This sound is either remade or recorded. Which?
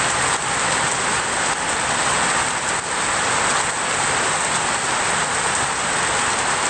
recorded